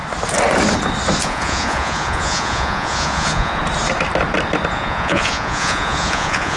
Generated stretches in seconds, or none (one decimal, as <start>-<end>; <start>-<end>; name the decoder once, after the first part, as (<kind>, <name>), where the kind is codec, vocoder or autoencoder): 1.2-3.6 (vocoder, Vocos); 4.7-6.6